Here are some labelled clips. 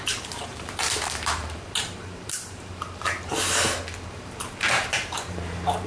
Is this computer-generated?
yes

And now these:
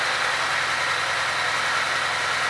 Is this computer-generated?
no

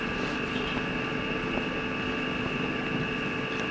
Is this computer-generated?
no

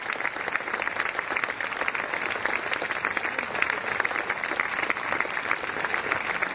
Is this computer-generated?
no